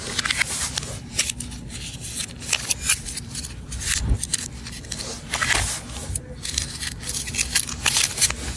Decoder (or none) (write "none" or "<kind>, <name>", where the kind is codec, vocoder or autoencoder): none